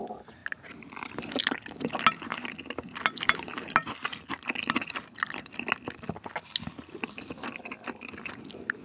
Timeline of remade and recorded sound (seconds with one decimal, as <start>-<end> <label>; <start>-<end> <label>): 0.0-8.8 recorded